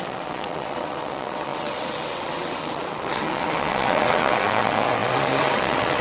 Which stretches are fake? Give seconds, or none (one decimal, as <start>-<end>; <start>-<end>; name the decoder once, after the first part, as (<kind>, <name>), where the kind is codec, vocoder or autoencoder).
0.0-6.0 (vocoder, WaveNeXt)